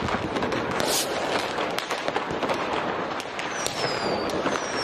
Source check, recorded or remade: recorded